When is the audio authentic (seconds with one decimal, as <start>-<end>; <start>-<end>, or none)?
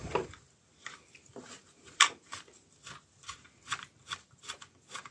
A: 2.8-4.2